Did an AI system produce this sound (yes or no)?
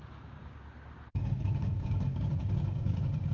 yes